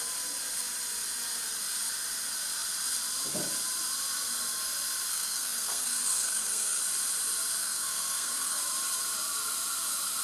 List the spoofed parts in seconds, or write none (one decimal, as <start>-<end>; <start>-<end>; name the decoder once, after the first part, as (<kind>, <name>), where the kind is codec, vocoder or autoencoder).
5.1-6.8 (codec, SNAC); 7.6-8.6